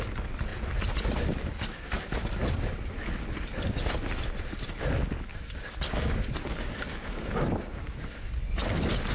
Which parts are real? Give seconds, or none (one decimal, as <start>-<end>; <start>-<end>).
0.0-5.3; 8.3-9.1